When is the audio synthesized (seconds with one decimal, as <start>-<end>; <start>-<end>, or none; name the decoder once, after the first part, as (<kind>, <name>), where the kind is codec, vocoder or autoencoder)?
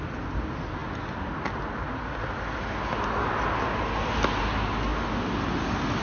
none